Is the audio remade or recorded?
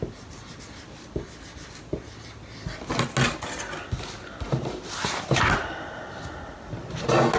recorded